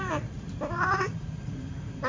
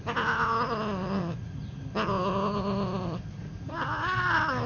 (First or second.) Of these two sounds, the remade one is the first